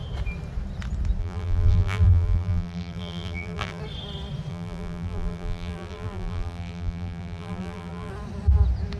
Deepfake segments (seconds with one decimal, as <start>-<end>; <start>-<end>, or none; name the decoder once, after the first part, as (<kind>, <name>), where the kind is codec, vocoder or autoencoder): 1.2-3.8 (vocoder, BigVGAN v2); 4.5-8.1